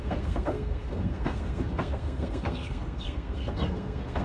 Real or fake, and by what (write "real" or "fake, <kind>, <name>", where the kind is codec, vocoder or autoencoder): fake, codec, SNAC